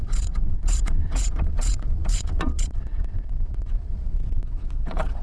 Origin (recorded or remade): remade